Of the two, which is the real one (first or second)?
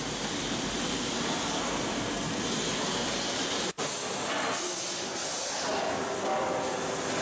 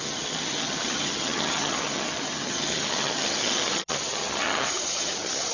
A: first